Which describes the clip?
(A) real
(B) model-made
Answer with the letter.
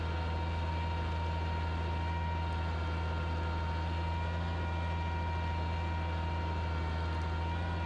A